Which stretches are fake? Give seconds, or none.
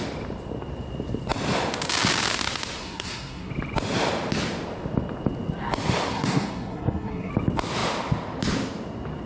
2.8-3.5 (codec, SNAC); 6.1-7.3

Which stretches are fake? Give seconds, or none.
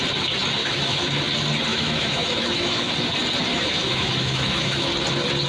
0.6-1.2 (autoencoder, DAC-VAE); 1.7-2.9; 3.5-4.9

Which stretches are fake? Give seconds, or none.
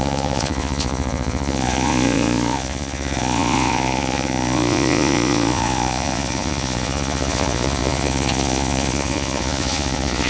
0.0-10.3 (vocoder, Vocos)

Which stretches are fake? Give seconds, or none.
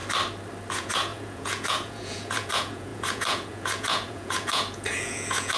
0.7-5.6 (vocoder, Vocos)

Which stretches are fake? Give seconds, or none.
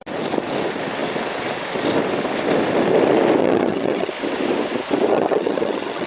3.4-4.1 (vocoder, HiFi-GAN); 5.1-6.1